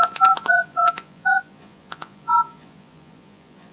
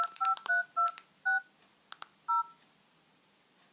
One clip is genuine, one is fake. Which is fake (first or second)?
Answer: first